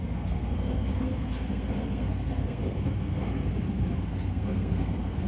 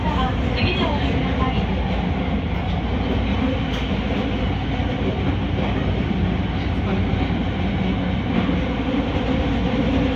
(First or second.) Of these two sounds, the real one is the second